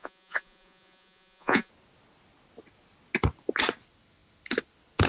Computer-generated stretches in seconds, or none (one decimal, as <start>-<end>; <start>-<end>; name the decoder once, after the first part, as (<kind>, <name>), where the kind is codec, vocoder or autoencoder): 0.0-1.7 (vocoder, Vocos)